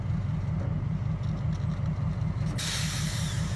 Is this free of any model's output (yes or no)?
yes